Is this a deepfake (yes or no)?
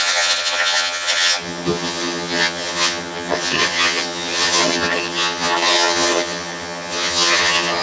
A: yes